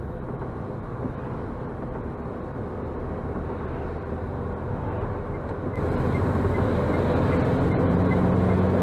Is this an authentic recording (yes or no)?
yes